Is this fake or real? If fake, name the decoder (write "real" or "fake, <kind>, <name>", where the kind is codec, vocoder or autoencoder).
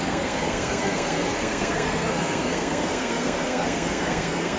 fake, codec, SNAC